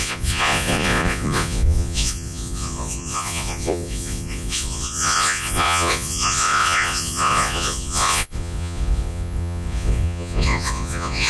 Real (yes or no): no